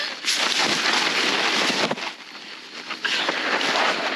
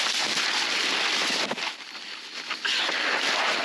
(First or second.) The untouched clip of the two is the second